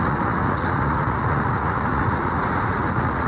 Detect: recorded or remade remade